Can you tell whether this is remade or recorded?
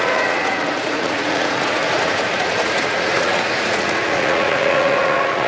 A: remade